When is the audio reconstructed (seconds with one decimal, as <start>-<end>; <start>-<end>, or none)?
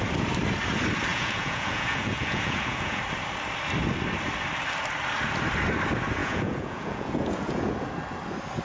1.1-3.0; 6.2-7.7